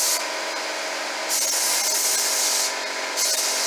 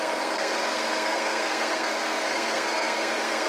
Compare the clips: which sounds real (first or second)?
first